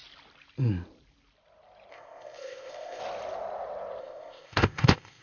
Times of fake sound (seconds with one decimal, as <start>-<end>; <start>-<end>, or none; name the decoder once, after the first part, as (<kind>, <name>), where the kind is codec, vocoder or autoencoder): 1.9-3.0 (codec, ZipCodec); 4.0-5.2